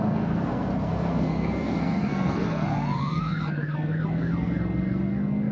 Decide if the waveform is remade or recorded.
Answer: remade